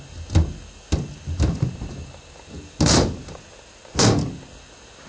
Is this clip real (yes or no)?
yes